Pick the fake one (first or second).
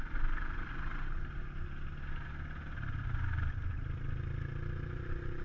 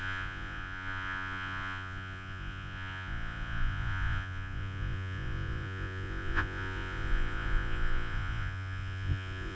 second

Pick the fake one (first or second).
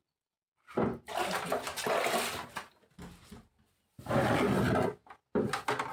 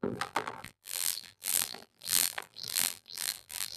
second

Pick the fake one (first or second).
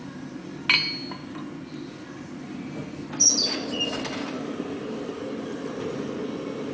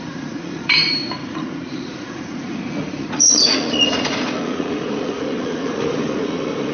second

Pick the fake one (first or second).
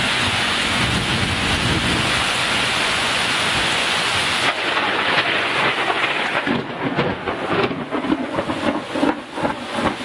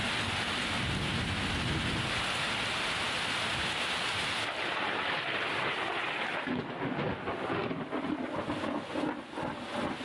first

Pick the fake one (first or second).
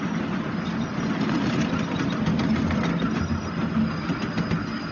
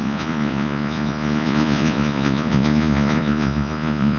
second